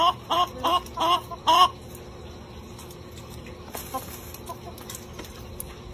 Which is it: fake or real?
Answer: real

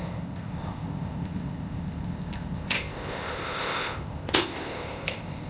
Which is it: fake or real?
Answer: fake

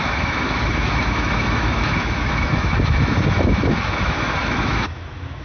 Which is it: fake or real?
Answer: fake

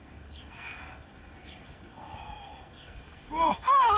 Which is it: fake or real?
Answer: fake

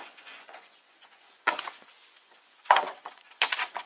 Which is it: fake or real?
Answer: fake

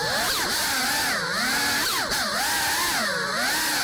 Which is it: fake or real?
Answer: real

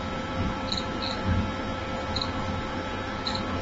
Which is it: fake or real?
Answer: real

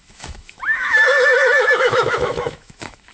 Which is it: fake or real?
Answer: fake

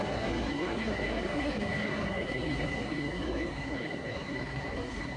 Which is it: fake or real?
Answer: fake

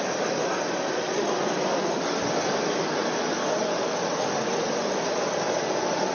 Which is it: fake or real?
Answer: real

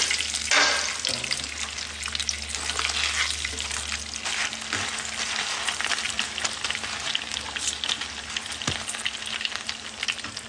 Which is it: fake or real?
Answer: real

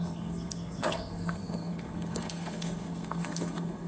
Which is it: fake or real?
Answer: fake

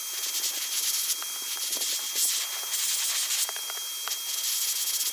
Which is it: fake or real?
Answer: real